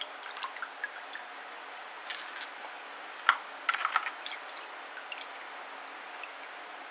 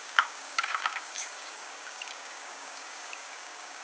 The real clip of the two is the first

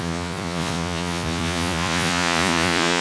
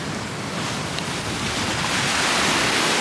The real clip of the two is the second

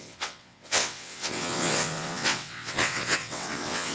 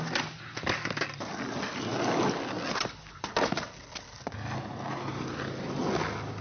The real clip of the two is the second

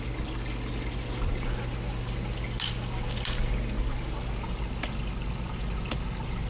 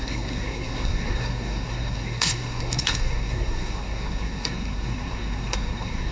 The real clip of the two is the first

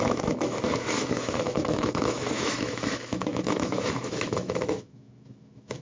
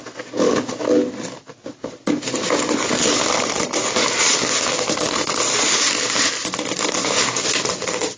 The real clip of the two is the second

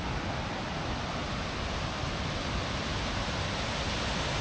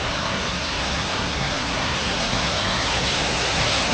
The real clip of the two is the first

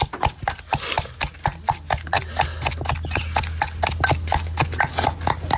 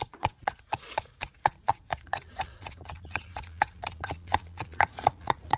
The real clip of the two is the first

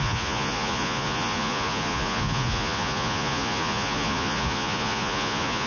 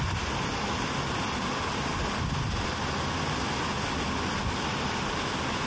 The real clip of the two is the second